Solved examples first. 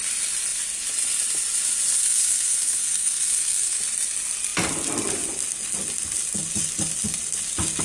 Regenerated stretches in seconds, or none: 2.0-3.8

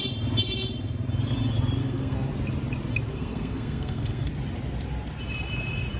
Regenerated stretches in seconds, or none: 1.8-2.3; 3.1-4.3

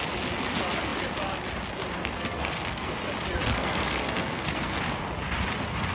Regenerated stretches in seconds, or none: 2.0-2.9; 3.5-4.8